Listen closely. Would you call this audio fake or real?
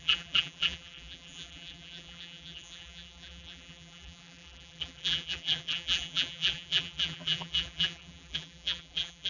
fake